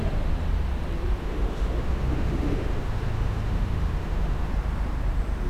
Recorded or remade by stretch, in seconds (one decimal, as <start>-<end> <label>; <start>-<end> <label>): 0.0-1.2 recorded; 1.2-4.5 remade; 4.5-5.5 recorded

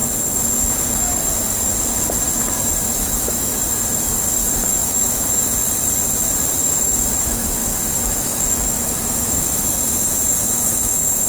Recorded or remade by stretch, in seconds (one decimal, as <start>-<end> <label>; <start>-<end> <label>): 0.0-3.0 recorded; 3.0-3.5 remade; 3.5-4.5 recorded; 4.5-5.6 remade; 5.6-6.6 recorded; 6.6-11.3 remade

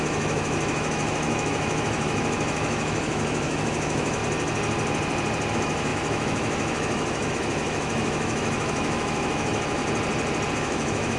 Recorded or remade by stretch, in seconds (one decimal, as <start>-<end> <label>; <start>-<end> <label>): 0.0-4.2 remade; 4.2-5.5 recorded; 5.5-9.8 remade; 9.8-10.5 recorded; 10.5-11.2 remade

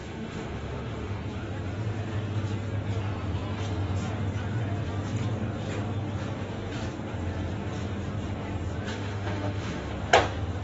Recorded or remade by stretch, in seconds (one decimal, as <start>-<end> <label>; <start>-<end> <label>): 0.0-1.2 remade; 1.2-8.9 recorded; 8.9-9.9 remade; 9.9-10.6 recorded

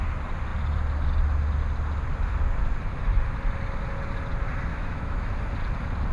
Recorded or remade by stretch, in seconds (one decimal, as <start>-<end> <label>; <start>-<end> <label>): 0.0-4.7 recorded; 4.7-5.3 remade; 5.3-6.1 recorded

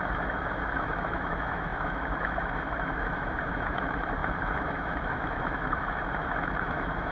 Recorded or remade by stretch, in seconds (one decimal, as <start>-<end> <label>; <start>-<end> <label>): 0.0-7.1 remade

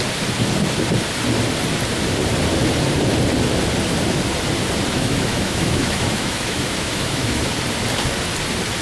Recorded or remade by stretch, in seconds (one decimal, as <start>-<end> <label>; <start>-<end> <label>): 0.0-4.9 recorded; 4.9-7.5 remade; 7.5-8.8 recorded